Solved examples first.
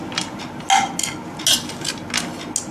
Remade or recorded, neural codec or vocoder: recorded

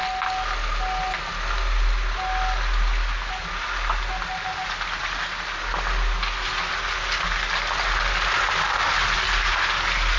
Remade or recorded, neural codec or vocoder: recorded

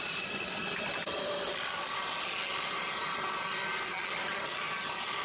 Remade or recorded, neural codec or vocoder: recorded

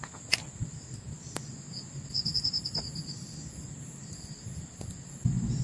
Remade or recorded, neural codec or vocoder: recorded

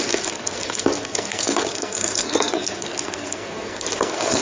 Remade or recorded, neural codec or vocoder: remade, codec, SNAC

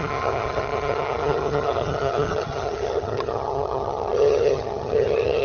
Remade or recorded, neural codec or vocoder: remade, vocoder, HiFi-GAN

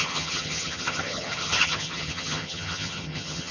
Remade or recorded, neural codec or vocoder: remade, vocoder, HiFi-GAN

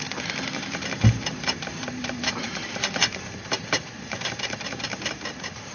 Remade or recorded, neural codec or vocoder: remade, vocoder, BigVGAN v2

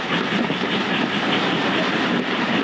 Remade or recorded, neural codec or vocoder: remade, vocoder, BigVGAN v2